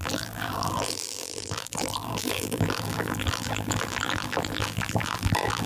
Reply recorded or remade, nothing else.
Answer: remade